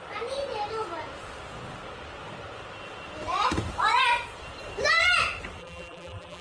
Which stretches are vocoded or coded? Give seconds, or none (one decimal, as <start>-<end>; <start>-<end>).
5.6-6.4